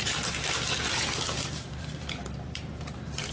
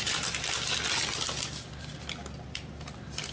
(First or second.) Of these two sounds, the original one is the second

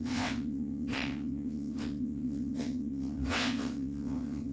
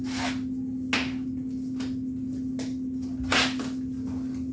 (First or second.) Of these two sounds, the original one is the second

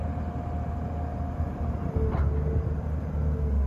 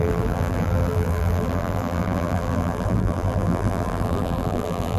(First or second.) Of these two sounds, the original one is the first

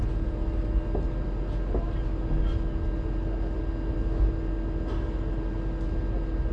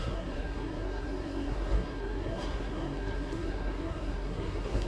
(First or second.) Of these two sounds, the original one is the first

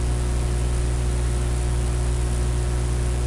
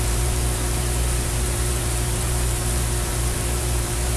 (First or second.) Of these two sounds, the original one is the first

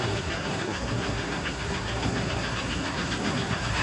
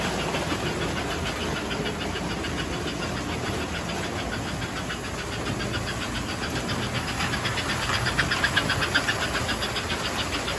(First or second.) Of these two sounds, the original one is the second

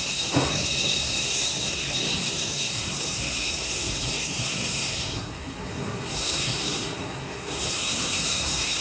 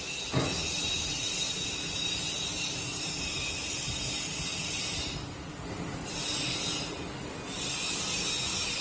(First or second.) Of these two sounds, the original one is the second